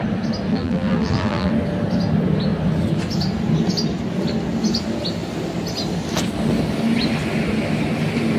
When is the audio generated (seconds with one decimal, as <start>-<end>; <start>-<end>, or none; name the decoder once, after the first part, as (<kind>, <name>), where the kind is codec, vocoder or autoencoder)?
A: 0.5-1.5 (vocoder, BigVGAN v2)